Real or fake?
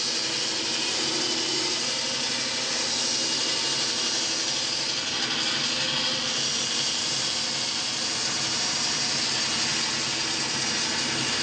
real